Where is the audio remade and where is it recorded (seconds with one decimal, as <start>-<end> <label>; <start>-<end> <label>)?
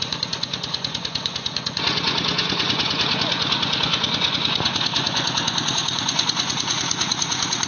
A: 0.0-7.7 remade